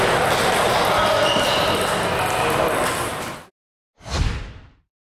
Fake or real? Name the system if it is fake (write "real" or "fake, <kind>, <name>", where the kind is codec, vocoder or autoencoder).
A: real